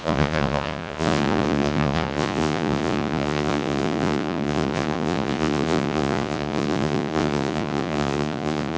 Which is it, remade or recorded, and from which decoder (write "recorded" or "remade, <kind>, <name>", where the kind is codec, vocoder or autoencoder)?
remade, vocoder, Vocos